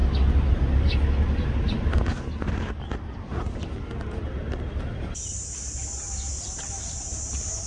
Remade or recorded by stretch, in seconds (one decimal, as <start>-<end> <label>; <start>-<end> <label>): 0.0-7.7 recorded